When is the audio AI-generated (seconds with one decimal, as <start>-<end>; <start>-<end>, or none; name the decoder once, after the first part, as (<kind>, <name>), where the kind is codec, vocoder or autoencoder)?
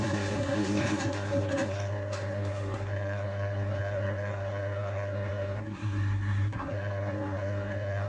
0.0-8.1 (codec, SNAC)